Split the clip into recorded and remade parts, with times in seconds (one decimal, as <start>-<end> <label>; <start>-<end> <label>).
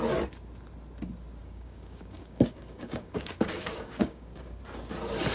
0.0-1.4 recorded; 1.4-4.6 remade; 4.6-5.3 recorded